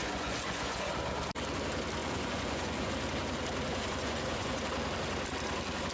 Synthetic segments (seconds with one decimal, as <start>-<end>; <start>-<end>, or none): 0.0-0.9; 2.0-2.9; 3.9-4.6